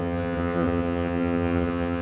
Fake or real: fake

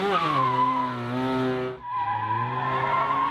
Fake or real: real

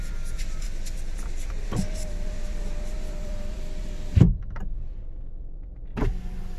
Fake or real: fake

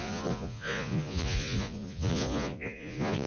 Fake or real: fake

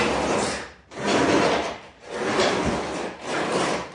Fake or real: real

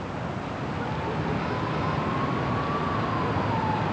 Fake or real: real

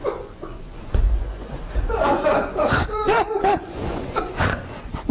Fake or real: fake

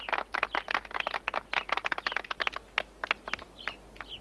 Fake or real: real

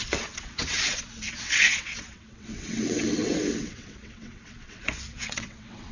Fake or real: fake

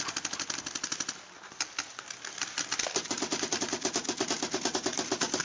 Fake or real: real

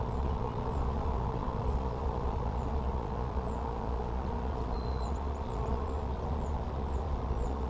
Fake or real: fake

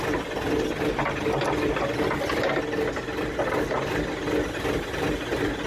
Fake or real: real